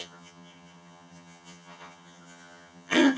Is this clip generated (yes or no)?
yes